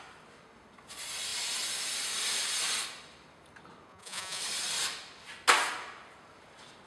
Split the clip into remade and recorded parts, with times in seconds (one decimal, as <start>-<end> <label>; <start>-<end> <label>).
0.0-3.9 recorded; 3.9-4.4 remade; 4.4-6.9 recorded